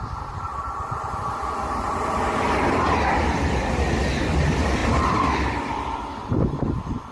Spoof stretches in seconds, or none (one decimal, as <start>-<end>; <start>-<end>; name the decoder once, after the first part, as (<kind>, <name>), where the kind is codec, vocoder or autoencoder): none